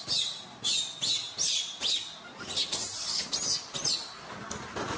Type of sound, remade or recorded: recorded